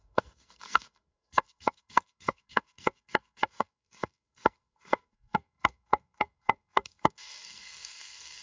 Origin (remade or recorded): remade